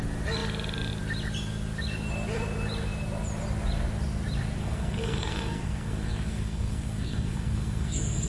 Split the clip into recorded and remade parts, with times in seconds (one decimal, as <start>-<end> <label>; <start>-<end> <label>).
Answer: 0.0-4.6 recorded; 4.6-8.3 remade